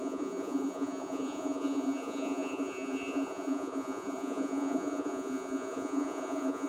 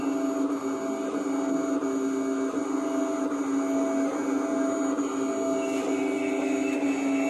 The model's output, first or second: first